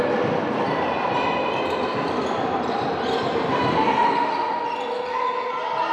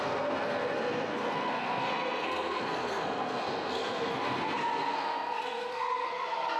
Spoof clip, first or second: second